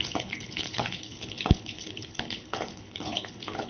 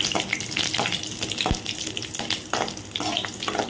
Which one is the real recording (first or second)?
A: second